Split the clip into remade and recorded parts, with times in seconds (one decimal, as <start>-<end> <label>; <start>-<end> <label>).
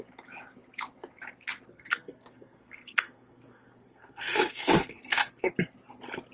0.0-1.7 recorded; 1.7-5.5 remade; 5.5-6.3 recorded